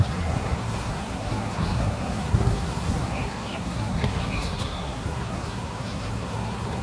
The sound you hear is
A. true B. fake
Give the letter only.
B